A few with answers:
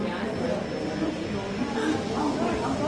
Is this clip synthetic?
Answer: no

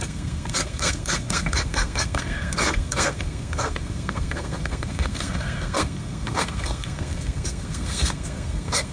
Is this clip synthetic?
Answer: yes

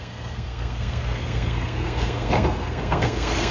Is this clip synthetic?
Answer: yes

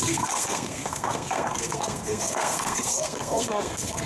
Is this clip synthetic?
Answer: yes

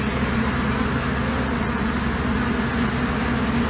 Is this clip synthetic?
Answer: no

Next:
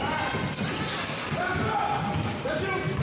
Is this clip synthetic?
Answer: no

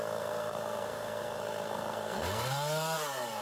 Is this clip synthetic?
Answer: yes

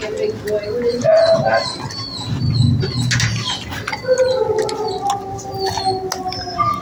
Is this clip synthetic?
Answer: no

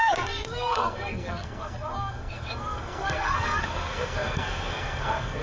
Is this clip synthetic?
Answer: yes